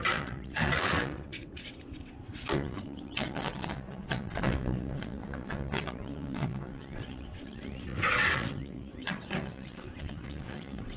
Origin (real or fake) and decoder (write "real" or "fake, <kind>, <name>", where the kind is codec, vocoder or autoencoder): fake, vocoder, WaveNeXt